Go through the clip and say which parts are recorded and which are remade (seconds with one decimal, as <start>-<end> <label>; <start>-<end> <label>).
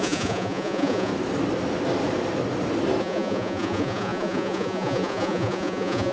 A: 0.0-1.1 remade; 1.1-3.0 recorded; 3.0-6.1 remade